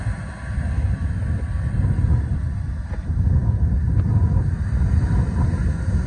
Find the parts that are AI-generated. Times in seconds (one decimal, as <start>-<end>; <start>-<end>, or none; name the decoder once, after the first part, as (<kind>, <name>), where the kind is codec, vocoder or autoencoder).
none